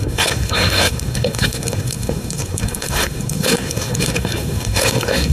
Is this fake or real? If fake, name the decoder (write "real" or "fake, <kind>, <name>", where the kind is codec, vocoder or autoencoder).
fake, codec, SNAC